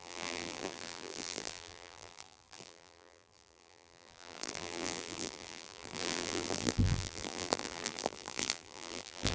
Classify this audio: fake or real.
fake